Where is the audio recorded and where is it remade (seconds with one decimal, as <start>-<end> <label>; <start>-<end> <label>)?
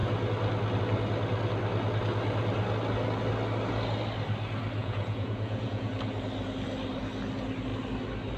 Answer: 0.0-4.8 recorded; 4.8-5.9 remade; 5.9-8.4 recorded